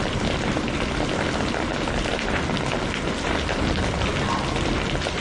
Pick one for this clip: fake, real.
real